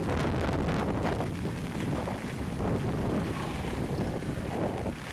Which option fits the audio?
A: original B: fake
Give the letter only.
A